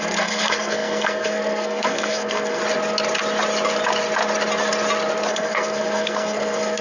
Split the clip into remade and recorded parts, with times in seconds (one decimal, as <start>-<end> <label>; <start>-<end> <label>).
0.0-2.6 remade; 2.6-5.3 recorded; 5.3-6.8 remade